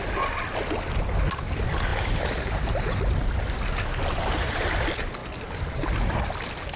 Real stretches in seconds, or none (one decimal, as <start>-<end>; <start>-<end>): 0.0-1.9; 3.3-6.8